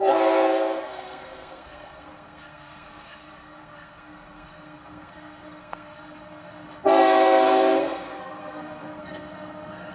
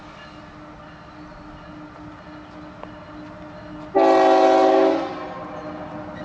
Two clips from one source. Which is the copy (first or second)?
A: first